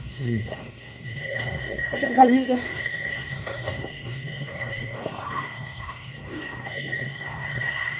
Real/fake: fake